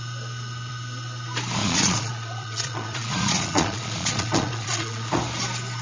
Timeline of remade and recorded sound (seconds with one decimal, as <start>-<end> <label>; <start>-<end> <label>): 0.0-1.6 recorded; 1.6-5.1 remade; 5.1-5.8 recorded